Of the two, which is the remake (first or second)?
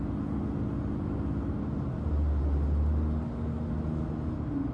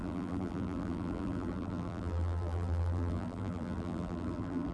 second